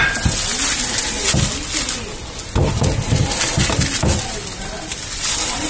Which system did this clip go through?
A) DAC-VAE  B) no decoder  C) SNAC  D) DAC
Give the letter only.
B